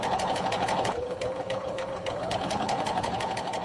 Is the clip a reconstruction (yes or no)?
yes